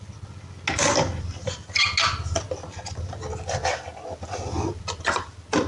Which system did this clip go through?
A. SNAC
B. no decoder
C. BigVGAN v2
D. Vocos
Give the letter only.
B